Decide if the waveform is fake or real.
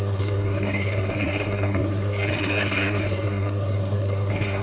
fake